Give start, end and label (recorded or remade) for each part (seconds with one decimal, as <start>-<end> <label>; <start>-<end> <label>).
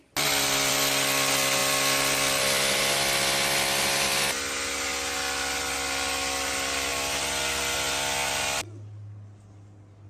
0.0-10.1 recorded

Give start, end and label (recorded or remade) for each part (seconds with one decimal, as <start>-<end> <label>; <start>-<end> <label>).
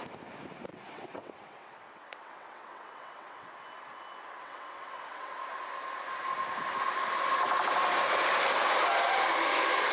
0.0-0.7 recorded; 0.7-3.5 remade; 3.5-4.4 recorded; 4.4-5.4 remade; 5.4-9.9 recorded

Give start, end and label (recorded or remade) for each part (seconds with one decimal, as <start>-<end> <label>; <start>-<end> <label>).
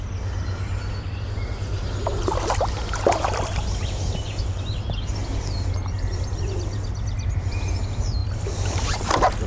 0.0-9.5 recorded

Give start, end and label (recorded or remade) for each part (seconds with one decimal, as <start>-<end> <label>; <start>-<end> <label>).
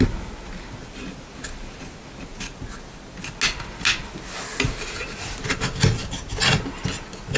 0.0-7.4 recorded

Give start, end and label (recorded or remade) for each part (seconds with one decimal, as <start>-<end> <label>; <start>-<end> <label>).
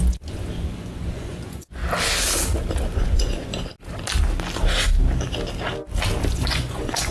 0.0-1.8 remade; 1.8-3.0 recorded; 3.0-3.7 remade; 3.7-6.3 recorded; 6.3-7.1 remade